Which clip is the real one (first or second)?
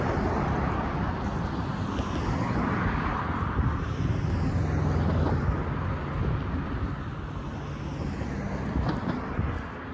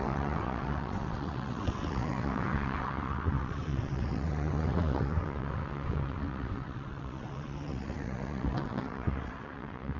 first